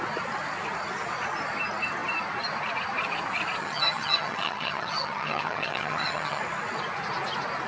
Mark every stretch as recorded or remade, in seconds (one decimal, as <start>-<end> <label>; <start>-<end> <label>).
0.0-3.6 recorded; 3.6-6.4 remade; 6.4-7.7 recorded